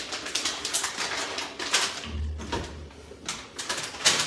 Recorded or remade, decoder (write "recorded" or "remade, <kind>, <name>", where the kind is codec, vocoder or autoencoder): recorded